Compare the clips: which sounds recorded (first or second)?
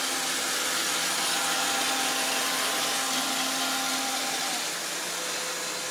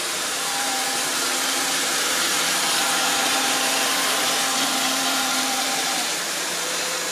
first